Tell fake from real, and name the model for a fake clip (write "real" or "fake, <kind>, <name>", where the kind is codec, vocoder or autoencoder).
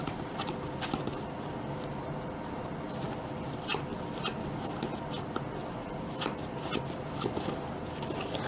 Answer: real